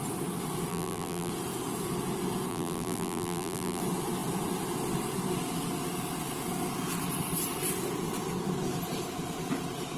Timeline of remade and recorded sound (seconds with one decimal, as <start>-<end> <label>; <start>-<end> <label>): 0.0-0.7 recorded; 0.7-1.3 remade; 1.3-2.5 recorded; 2.5-3.8 remade; 3.8-10.0 recorded